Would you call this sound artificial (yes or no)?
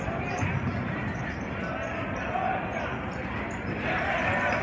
yes